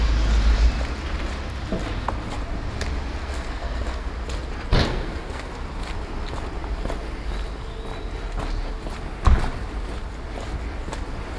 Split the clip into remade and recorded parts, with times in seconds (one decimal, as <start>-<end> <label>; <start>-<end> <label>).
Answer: 0.0-3.2 recorded; 3.2-4.1 remade; 4.1-4.8 recorded; 4.8-5.5 remade; 5.5-11.4 recorded